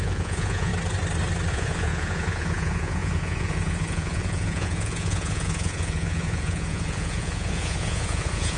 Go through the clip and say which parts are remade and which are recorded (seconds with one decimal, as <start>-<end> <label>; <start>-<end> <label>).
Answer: 0.0-0.7 remade; 0.7-1.5 recorded; 1.5-8.6 remade